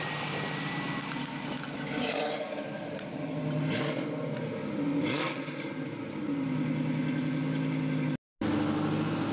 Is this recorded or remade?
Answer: recorded